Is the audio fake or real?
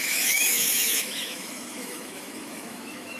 fake